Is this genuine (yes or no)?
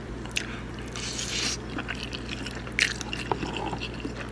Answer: yes